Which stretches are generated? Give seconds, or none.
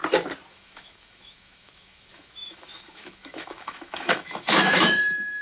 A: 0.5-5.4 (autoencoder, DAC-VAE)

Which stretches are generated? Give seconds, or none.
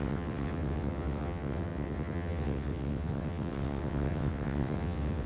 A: 0.0-5.3 (vocoder, WaveNeXt)